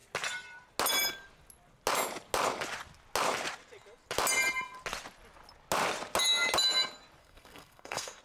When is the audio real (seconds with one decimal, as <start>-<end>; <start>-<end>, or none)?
0.0-7.2